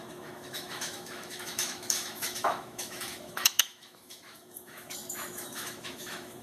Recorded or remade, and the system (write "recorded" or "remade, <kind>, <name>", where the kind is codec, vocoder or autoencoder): remade, autoencoder, DAC-VAE